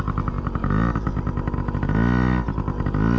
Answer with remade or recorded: recorded